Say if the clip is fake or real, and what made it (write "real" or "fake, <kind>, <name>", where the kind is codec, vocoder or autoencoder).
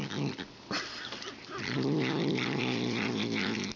real